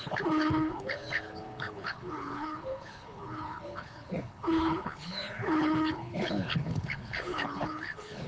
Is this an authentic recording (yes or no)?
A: no